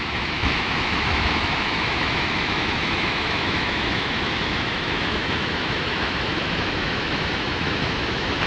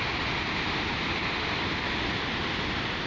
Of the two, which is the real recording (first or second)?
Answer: second